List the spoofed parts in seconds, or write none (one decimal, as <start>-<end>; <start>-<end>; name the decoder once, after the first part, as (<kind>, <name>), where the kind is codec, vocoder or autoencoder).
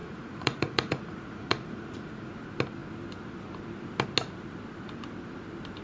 0.0-2.3 (vocoder, Vocos)